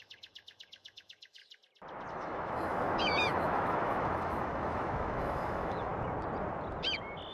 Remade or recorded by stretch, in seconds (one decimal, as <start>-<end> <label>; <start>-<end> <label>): 0.0-1.4 remade; 1.4-2.1 recorded; 2.1-5.9 remade; 5.9-7.3 recorded